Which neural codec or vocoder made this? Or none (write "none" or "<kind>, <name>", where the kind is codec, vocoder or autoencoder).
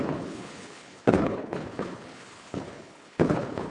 codec, HILCodec